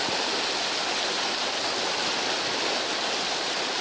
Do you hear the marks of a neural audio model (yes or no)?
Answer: no